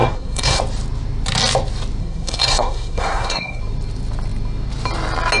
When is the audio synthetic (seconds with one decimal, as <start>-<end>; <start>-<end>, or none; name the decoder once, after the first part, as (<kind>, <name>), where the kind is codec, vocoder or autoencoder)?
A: 0.0-0.6 (codec, SNAC); 2.0-3.6